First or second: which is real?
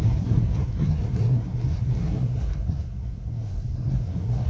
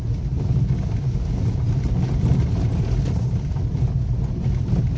second